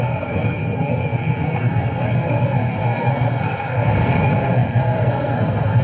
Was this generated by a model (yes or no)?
yes